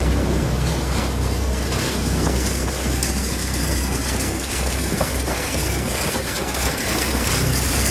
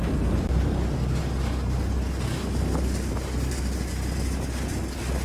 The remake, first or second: first